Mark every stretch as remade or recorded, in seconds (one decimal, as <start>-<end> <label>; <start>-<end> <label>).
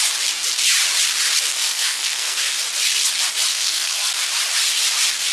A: 0.0-1.5 recorded; 1.5-2.5 remade; 2.5-3.5 recorded; 3.5-4.1 remade; 4.1-5.3 recorded